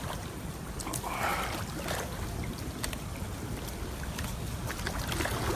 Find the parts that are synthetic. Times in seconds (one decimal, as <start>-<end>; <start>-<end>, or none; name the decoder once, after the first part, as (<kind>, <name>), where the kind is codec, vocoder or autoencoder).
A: none